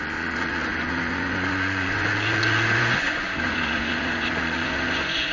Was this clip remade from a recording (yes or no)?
yes